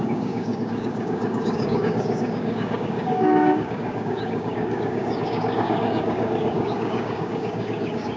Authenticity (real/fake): fake